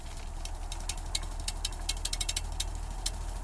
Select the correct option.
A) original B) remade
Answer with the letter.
A